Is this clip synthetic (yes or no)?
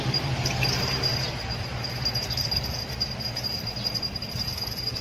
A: yes